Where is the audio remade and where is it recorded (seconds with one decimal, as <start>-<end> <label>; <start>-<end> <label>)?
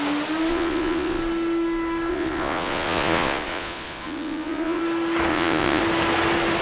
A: 0.0-0.5 recorded; 0.5-1.2 remade; 1.2-2.1 recorded; 2.1-4.8 remade; 4.8-5.3 recorded; 5.3-5.8 remade; 5.8-6.6 recorded